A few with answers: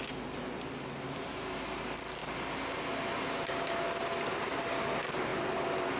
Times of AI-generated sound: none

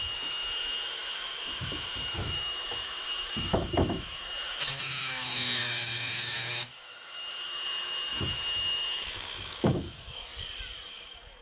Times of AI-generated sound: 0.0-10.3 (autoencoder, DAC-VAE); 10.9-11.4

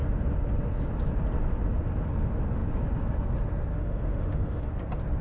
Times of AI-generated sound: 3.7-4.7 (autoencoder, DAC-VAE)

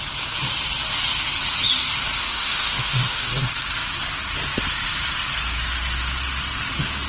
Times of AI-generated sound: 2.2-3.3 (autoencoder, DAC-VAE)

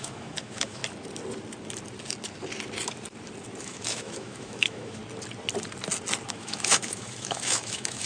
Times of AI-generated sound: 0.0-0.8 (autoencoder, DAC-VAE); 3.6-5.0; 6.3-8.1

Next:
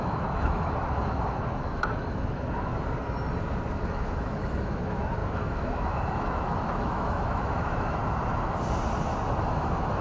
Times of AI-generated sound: 0.0-2.7 (autoencoder, DAC-VAE); 3.7-8.0; 9.4-10.0

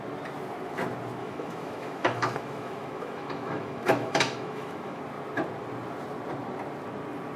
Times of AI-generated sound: 1.2-5.0 (autoencoder, DAC-VAE)

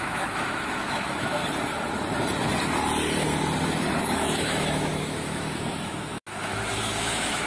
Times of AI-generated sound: 0.0-1.4 (autoencoder, DAC-VAE); 4.0-7.5